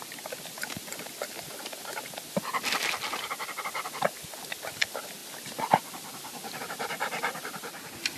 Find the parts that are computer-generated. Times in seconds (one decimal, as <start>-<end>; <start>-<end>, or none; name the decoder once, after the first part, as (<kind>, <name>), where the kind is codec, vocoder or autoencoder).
none